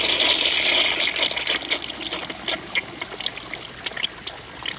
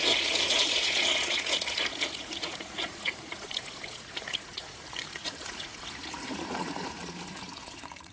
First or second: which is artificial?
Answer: second